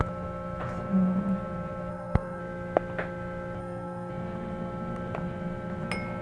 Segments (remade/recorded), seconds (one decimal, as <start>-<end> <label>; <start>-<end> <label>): 0.0-1.9 recorded; 1.9-2.4 remade; 2.4-3.6 recorded; 3.6-4.1 remade; 4.1-6.2 recorded